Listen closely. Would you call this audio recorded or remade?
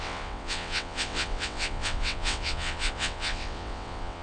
remade